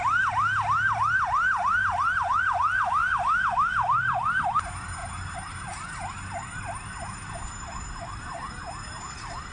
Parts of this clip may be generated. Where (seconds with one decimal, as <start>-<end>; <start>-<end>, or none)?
1.8-2.4; 3.0-4.4